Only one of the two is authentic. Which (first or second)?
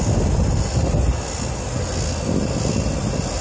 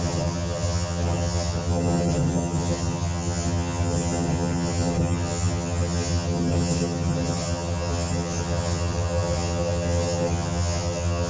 first